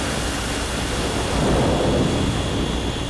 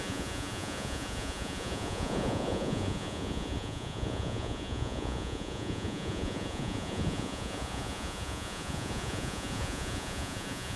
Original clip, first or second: first